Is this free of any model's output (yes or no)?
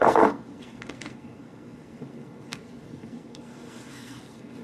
no